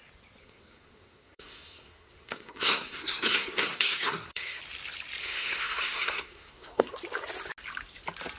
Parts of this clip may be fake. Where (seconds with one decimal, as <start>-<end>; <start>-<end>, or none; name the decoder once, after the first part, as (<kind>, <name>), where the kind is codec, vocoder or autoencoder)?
0.4-4.6 (codec, SNAC); 5.2-6.9